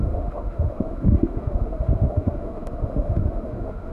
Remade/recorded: remade